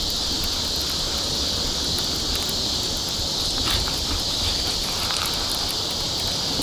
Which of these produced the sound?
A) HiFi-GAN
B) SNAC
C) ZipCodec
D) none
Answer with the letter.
D